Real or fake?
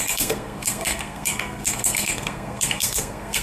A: fake